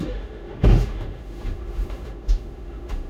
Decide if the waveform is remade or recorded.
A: remade